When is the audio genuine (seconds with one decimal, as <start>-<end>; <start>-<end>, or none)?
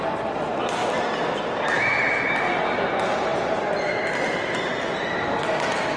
0.0-6.0